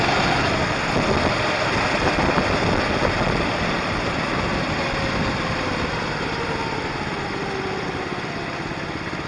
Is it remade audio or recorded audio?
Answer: recorded